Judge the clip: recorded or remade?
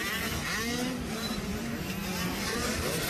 recorded